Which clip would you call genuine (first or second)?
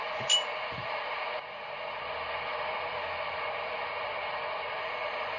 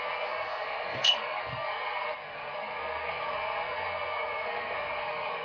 first